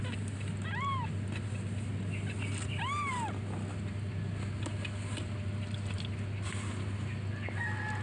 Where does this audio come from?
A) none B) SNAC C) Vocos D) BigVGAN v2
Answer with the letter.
A